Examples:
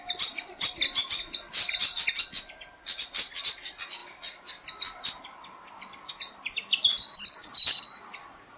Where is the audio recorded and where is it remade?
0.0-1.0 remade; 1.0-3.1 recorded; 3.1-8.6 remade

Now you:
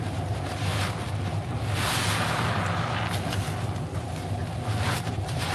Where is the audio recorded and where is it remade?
0.0-0.7 remade; 0.7-4.0 recorded; 4.0-4.4 remade; 4.4-5.1 recorded; 5.1-5.5 remade

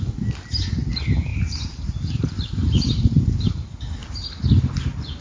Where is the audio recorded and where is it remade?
0.0-1.3 recorded; 1.3-3.5 remade; 3.5-4.0 recorded; 4.0-5.2 remade

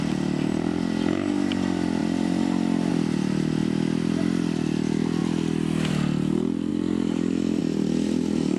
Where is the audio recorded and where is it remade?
0.0-6.7 recorded; 6.7-7.6 remade; 7.6-8.6 recorded

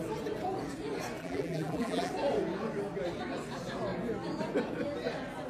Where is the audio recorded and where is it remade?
0.0-1.2 recorded; 1.2-2.1 remade; 2.1-5.5 recorded

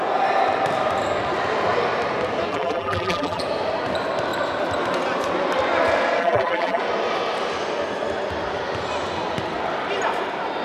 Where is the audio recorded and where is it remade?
0.0-2.5 recorded; 2.5-3.4 remade; 3.4-6.2 recorded; 6.2-6.8 remade; 6.8-10.6 recorded

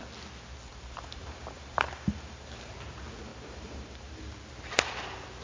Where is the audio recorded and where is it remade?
0.0-0.7 recorded; 0.7-2.7 remade; 2.7-3.3 recorded; 3.3-4.2 remade; 4.2-5.4 recorded